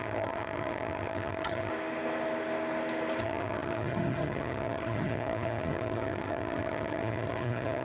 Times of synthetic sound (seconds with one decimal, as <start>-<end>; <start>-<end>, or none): 0.0-1.7; 3.2-7.8